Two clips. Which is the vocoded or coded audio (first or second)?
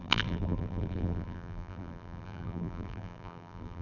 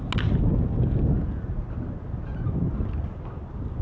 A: first